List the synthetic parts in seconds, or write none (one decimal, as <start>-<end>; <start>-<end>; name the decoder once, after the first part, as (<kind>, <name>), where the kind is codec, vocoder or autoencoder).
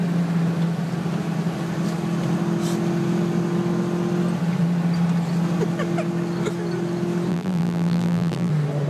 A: 7.3-8.5 (vocoder, BigVGAN v2)